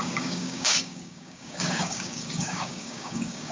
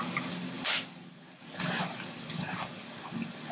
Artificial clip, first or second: first